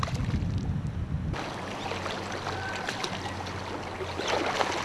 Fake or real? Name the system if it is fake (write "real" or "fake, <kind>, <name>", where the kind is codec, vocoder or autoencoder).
real